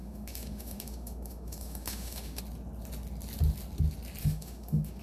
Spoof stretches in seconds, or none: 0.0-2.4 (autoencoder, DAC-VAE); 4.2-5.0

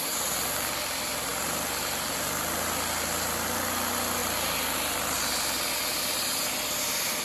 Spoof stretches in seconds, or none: none